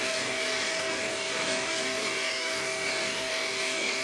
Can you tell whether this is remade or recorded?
remade